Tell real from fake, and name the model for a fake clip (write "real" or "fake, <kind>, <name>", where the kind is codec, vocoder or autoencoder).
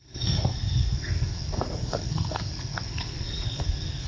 fake, codec, SNAC